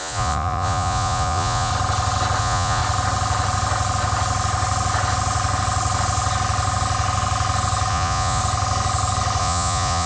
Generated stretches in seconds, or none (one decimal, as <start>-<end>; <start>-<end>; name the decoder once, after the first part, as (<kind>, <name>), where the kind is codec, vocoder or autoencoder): 0.0-1.7 (vocoder, Vocos); 2.4-2.8; 7.9-8.4; 9.4-10.1